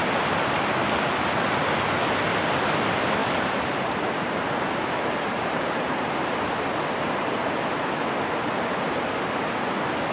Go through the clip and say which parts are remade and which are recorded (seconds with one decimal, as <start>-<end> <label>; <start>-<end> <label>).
0.0-3.2 recorded; 3.2-6.7 remade; 6.7-10.1 recorded